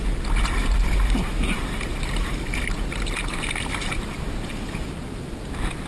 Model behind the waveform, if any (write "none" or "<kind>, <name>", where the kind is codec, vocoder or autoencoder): none